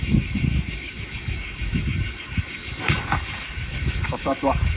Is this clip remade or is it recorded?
remade